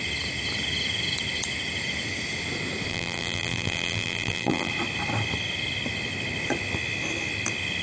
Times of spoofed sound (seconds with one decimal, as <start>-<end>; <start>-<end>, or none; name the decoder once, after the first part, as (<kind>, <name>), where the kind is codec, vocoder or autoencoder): 2.9-4.7 (vocoder, BigVGAN v2)